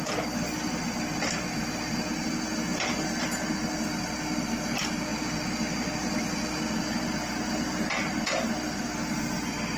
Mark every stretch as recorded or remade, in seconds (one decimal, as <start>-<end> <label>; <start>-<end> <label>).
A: 0.0-9.8 recorded